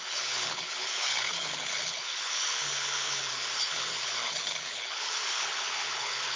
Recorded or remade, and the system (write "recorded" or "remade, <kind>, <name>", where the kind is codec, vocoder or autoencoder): remade, codec, HILCodec